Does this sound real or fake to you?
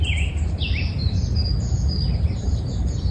real